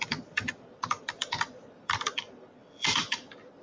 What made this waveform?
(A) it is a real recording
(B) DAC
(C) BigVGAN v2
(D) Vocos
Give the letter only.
C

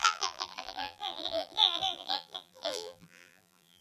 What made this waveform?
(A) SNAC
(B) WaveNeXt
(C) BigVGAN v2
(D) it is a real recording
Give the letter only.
C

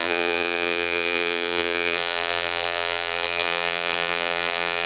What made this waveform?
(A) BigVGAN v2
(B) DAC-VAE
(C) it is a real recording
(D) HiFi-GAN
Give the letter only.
A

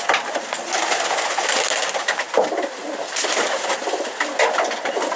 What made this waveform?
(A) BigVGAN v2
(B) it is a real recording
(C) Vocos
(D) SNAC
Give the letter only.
B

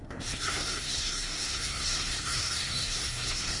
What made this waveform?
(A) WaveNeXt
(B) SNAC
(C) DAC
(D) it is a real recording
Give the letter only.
B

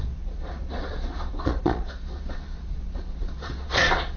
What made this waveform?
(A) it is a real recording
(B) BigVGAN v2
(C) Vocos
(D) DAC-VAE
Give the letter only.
C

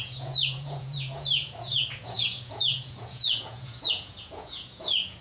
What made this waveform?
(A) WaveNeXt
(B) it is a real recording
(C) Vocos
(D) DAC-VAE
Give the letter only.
C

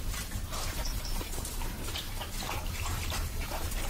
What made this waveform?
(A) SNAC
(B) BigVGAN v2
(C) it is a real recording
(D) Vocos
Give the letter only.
B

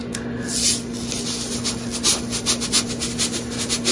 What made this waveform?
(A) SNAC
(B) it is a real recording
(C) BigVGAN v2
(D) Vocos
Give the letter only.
B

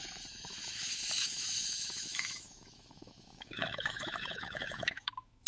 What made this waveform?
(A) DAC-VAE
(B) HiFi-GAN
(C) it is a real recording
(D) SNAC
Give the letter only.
A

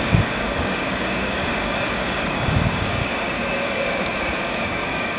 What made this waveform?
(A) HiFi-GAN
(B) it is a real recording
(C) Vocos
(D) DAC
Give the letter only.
D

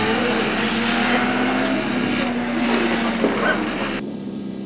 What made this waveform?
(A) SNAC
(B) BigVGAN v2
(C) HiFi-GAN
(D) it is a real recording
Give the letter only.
D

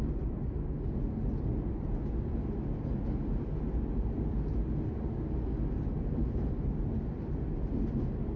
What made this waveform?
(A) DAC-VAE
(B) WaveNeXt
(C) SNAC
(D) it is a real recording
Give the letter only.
D